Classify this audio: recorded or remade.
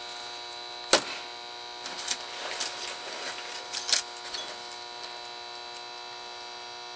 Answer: recorded